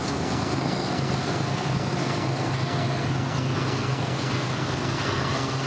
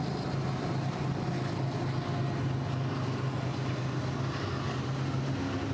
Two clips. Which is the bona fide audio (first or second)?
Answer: second